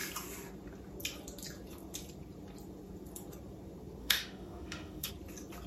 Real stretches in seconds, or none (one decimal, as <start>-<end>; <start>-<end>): 0.0-4.0; 5.1-5.7